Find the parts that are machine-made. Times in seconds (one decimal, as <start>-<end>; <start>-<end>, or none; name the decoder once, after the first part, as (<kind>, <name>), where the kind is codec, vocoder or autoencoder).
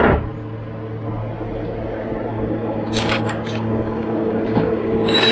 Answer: 2.3-5.3 (codec, DAC)